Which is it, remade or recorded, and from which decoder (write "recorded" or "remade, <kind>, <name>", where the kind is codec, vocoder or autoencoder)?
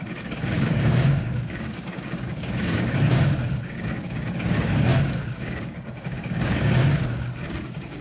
remade, codec, DAC